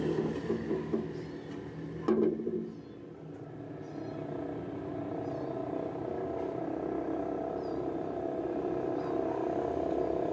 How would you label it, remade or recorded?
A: recorded